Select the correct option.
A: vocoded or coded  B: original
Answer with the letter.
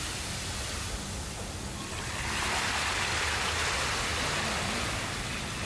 B